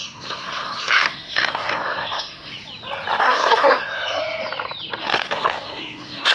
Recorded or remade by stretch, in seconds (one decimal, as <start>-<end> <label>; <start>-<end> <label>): 0.0-2.5 remade; 2.5-3.2 recorded; 3.2-4.2 remade; 4.2-5.0 recorded; 5.0-6.3 remade